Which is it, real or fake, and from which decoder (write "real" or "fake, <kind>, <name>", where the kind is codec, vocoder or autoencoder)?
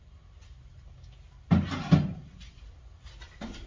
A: real